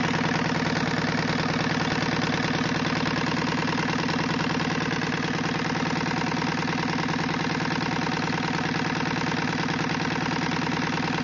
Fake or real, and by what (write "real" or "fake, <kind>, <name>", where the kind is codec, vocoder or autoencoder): real